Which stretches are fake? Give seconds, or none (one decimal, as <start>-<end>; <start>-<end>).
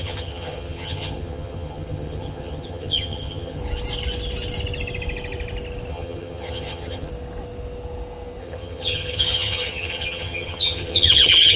0.0-3.6; 5.9-7.1; 8.4-11.6